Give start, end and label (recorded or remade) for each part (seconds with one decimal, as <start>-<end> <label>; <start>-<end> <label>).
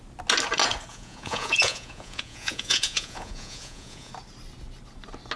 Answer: 0.0-0.9 recorded; 0.9-4.1 remade; 4.1-5.4 recorded